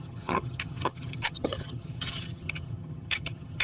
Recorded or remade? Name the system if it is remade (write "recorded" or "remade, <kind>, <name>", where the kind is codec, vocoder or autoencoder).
remade, vocoder, HiFi-GAN